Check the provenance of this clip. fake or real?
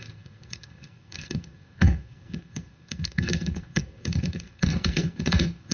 fake